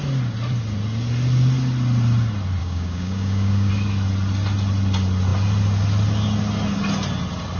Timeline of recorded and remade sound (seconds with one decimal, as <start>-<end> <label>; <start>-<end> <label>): 0.0-2.6 recorded; 2.6-3.7 remade; 3.7-7.6 recorded